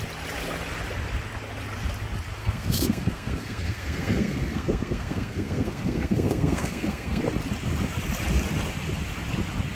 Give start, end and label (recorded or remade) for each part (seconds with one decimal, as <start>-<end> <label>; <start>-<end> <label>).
0.0-2.4 recorded; 2.4-7.2 remade; 7.2-9.7 recorded